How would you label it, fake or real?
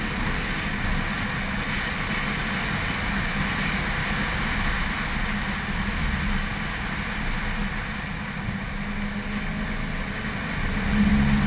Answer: real